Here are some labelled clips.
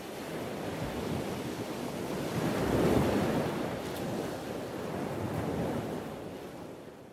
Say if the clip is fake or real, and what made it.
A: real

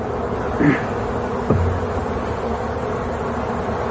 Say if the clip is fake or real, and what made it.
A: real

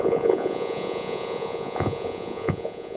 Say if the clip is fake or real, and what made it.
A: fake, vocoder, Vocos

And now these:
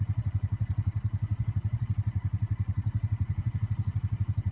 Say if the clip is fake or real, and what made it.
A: fake, vocoder, Vocos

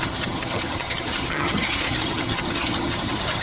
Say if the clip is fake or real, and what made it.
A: fake, vocoder, HiFi-GAN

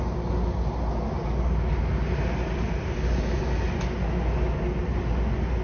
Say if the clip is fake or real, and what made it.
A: real